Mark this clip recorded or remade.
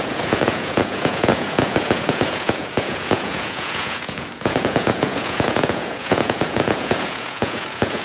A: remade